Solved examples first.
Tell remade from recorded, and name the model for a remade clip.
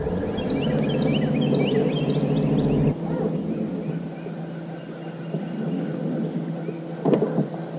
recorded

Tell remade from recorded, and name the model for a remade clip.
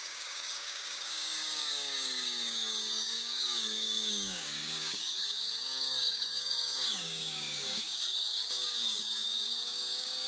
remade, codec, DAC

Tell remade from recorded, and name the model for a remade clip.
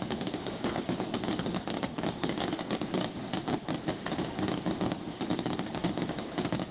remade, codec, DAC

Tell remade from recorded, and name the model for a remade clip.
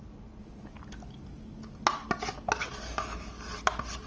recorded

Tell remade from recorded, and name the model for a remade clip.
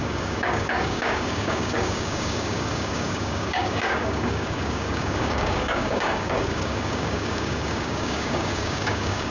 remade, codec, DAC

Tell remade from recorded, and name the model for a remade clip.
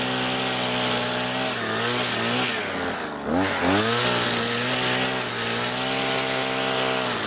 recorded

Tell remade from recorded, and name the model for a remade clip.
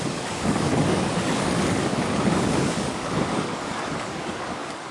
remade, codec, DAC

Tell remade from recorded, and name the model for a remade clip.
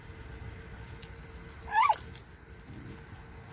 recorded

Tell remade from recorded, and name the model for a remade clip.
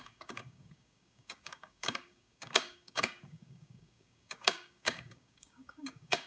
remade, codec, DAC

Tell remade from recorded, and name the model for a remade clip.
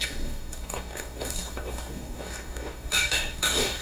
remade, codec, DAC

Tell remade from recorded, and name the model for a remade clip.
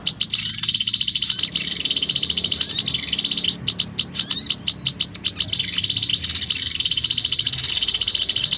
recorded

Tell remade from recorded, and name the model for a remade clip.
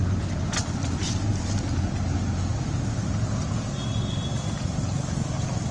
recorded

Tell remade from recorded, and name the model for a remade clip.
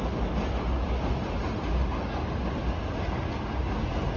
recorded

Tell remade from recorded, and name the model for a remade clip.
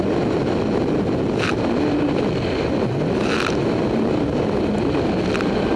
recorded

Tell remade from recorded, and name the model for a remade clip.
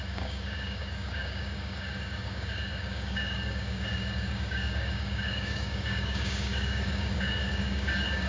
remade, codec, DAC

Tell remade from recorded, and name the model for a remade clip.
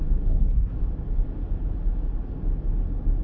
recorded